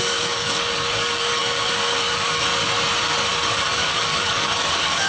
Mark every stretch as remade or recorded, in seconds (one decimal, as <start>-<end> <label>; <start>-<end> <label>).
0.0-2.5 remade; 2.5-3.3 recorded; 3.3-5.1 remade

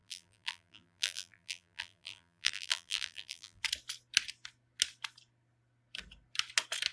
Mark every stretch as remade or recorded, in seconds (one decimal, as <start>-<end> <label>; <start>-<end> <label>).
0.0-3.6 remade; 3.6-6.9 recorded